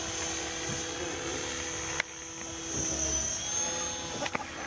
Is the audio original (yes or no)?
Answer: yes